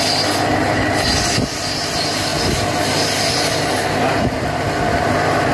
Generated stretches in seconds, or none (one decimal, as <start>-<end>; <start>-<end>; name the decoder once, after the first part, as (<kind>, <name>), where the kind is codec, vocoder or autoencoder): none